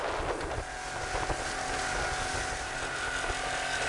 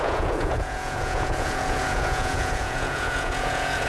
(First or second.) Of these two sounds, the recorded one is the first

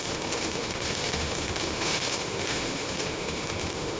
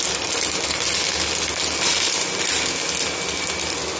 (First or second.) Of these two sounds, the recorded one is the second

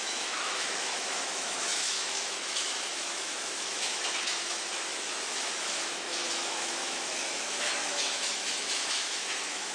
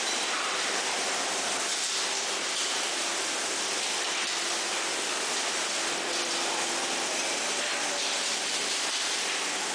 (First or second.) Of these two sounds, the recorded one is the second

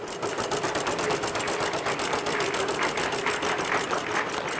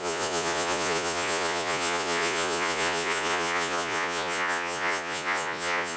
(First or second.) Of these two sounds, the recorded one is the first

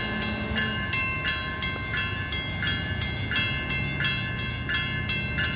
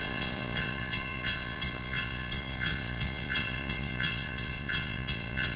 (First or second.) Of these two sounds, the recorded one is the first